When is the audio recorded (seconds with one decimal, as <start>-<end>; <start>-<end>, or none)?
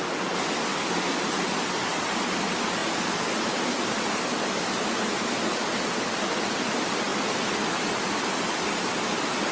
0.0-9.5